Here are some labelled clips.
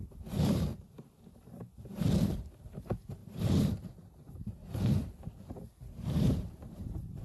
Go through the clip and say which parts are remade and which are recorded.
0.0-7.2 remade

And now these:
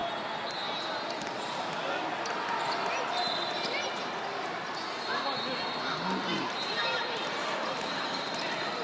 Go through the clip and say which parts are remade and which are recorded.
0.0-6.3 recorded; 6.3-8.8 remade

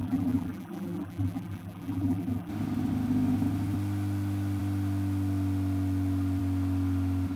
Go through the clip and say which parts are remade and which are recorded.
0.0-2.5 remade; 2.5-7.4 recorded

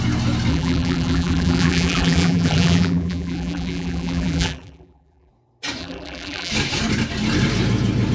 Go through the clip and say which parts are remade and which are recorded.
0.0-0.5 recorded; 0.5-5.3 remade; 5.3-5.8 recorded; 5.8-6.5 remade; 6.5-8.1 recorded

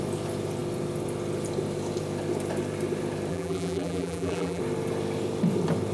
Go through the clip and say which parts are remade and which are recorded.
0.0-3.3 recorded; 3.3-4.6 remade; 4.6-5.9 recorded